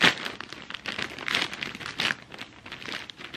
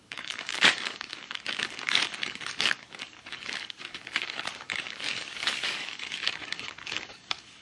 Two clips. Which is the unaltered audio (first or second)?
first